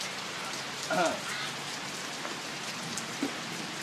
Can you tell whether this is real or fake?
real